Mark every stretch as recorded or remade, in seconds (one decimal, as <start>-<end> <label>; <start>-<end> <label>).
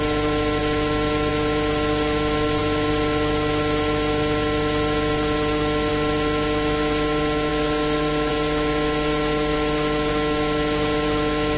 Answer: 0.0-7.5 recorded; 7.5-8.3 remade; 8.3-11.6 recorded